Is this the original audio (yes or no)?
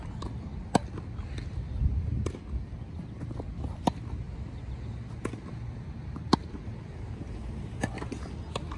yes